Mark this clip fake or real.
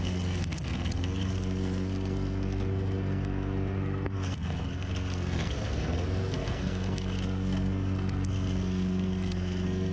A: fake